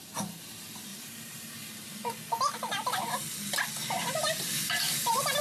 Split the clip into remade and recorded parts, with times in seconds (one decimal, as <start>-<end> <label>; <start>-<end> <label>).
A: 0.0-0.9 recorded; 0.9-2.1 remade; 2.1-2.7 recorded; 2.7-3.2 remade; 3.2-4.0 recorded; 4.0-4.9 remade; 4.9-5.4 recorded